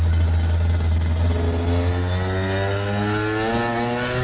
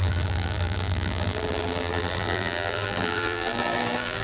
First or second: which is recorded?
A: first